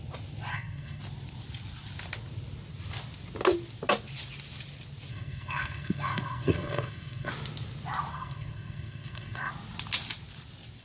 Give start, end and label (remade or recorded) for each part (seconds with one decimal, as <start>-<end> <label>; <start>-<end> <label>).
0.0-0.5 recorded; 0.5-1.0 remade; 1.0-5.1 recorded; 5.1-7.3 remade; 7.3-8.1 recorded; 8.1-9.5 remade; 9.5-10.8 recorded